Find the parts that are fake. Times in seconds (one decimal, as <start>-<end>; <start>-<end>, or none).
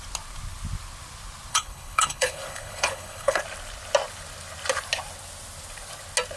1.5-3.4